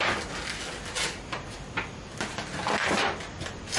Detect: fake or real real